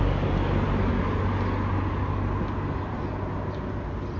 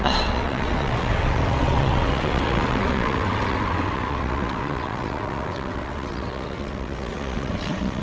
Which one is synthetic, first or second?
second